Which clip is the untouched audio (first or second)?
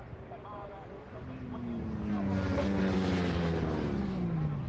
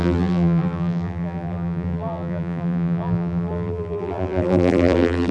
first